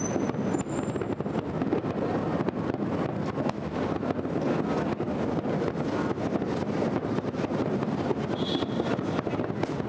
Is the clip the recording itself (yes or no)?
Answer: yes